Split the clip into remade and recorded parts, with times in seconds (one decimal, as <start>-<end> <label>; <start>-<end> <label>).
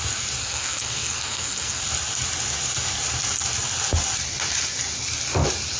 0.0-0.4 recorded; 0.4-1.8 remade; 1.8-5.8 recorded